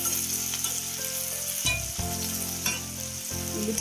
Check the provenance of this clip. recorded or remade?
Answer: recorded